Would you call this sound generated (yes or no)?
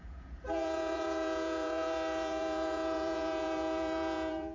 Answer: yes